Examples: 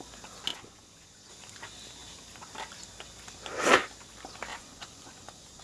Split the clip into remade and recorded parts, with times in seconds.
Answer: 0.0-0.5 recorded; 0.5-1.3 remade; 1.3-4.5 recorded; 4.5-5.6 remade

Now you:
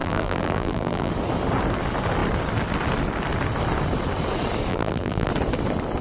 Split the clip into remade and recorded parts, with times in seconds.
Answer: 0.0-1.1 remade; 1.1-4.7 recorded; 4.7-5.3 remade; 5.3-6.0 recorded

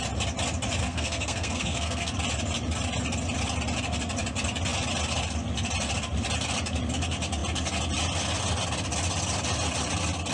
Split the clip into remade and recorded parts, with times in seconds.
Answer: 0.0-0.8 recorded; 0.8-2.1 remade; 2.1-10.3 recorded

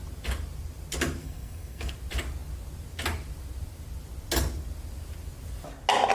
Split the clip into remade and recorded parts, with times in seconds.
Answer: 0.0-1.2 recorded; 1.2-1.9 remade; 1.9-6.1 recorded

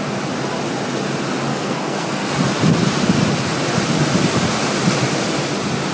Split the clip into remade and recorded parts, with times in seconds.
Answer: 0.0-1.5 recorded; 1.5-2.3 remade; 2.3-5.9 recorded

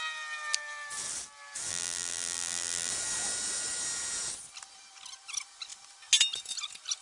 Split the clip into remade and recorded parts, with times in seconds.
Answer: 0.0-1.7 recorded; 1.7-2.9 remade; 2.9-7.0 recorded

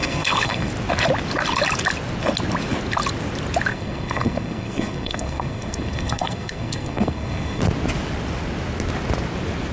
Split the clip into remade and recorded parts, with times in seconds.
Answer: 0.0-0.7 remade; 0.7-3.7 recorded; 3.7-7.6 remade; 7.6-9.7 recorded